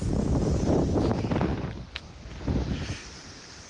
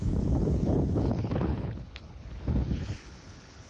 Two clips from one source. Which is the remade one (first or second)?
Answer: second